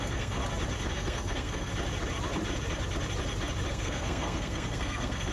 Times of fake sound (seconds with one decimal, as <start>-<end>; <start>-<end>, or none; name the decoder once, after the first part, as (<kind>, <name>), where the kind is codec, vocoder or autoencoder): 0.0-0.4 (codec, SNAC); 0.9-1.7; 3.7-5.3